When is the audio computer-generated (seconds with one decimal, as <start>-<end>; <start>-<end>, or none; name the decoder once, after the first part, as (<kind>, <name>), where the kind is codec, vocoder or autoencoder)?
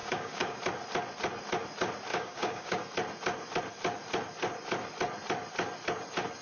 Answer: 0.0-0.6 (codec, DAC); 2.1-2.8